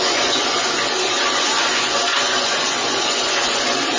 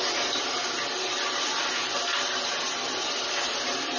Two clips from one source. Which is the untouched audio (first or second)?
second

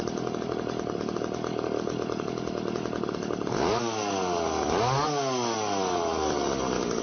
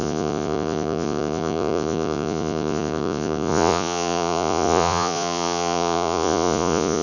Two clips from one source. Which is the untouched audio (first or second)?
first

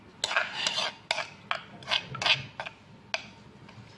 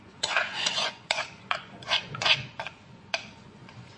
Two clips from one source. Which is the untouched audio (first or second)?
first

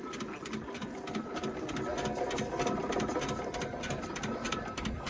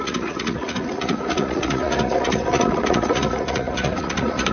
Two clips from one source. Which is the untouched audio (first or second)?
first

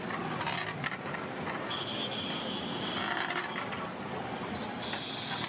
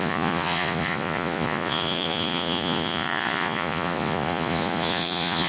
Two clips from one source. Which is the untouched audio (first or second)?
first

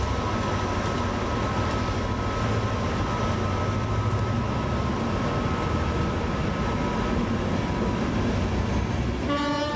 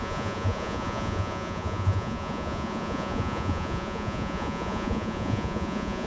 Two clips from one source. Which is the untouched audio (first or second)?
first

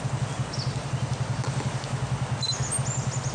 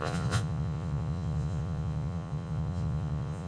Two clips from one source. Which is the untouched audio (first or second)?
first